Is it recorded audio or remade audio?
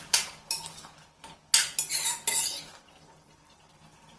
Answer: recorded